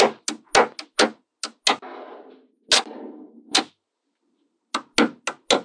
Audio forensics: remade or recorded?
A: recorded